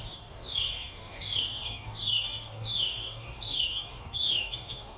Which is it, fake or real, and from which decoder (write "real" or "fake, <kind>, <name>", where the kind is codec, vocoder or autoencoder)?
fake, codec, DAC